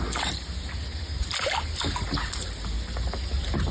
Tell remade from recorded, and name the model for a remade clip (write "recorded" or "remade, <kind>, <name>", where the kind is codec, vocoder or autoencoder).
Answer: recorded